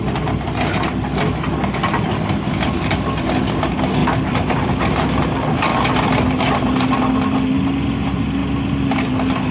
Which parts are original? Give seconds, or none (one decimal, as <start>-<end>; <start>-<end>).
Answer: 0.0-4.0; 4.8-5.7; 6.4-8.4; 9.1-9.5